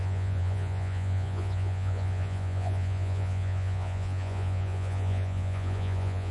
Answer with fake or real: fake